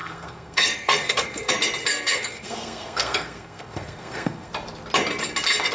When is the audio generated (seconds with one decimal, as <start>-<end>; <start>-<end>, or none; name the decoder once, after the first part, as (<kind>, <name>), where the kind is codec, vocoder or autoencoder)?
0.0-1.5 (codec, SNAC); 1.9-4.5